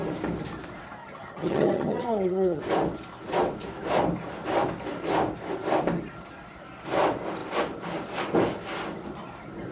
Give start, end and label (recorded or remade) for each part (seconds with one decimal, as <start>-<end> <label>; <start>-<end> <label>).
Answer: 0.0-1.0 recorded; 1.0-2.6 remade; 2.6-9.7 recorded